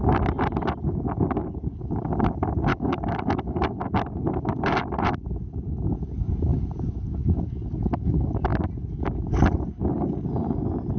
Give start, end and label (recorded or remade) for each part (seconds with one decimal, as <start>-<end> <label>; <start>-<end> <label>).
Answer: 0.0-2.7 recorded; 2.7-3.7 remade; 3.7-11.0 recorded